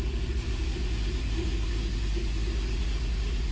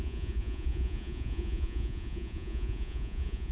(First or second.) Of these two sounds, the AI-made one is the second